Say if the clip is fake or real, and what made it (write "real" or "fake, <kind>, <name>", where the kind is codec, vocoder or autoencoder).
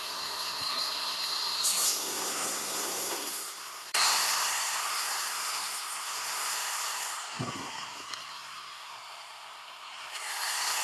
fake, codec, SNAC